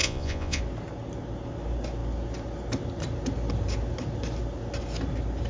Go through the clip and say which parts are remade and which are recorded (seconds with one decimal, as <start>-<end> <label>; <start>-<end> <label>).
0.0-0.6 remade; 0.6-5.5 recorded

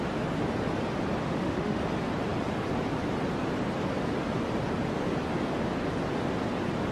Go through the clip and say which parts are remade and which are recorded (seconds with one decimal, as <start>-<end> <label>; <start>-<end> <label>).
0.0-1.2 recorded; 1.2-1.8 remade; 1.8-6.9 recorded

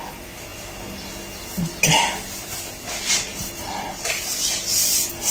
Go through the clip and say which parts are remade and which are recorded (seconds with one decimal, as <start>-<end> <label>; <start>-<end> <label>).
0.0-3.3 recorded; 3.3-4.6 remade; 4.6-5.3 recorded

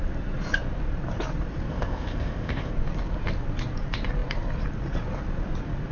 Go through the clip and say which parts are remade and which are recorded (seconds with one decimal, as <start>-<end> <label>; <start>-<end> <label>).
0.0-1.7 recorded; 1.7-2.7 remade; 2.7-5.9 recorded

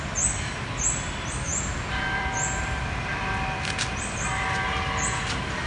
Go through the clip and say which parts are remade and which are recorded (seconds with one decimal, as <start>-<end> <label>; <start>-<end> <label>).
0.0-1.5 recorded; 1.5-4.6 remade; 4.6-5.7 recorded